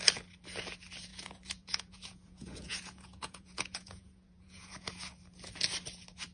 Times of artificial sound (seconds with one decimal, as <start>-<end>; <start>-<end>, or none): 1.1-4.9